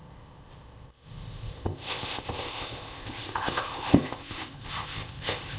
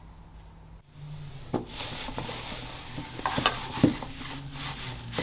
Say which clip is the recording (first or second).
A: second